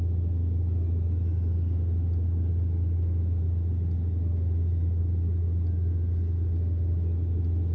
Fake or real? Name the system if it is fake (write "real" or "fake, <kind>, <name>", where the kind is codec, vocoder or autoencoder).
real